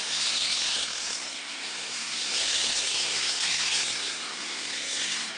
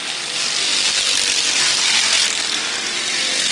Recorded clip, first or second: second